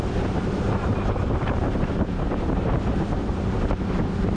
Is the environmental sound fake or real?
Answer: fake